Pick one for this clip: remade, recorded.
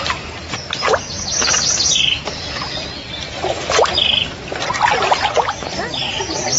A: recorded